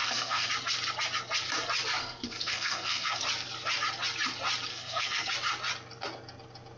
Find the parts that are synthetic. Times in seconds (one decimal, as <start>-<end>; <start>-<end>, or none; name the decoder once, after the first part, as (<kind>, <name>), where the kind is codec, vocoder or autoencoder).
0.0-0.5 (codec, SNAC); 2.0-3.2; 4.7-5.3